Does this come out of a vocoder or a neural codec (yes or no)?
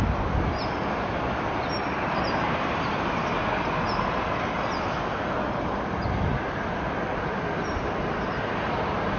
no